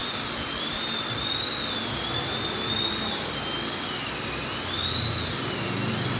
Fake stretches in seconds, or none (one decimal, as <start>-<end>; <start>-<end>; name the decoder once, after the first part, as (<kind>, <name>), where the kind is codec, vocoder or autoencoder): none